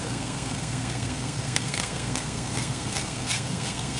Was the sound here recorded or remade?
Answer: remade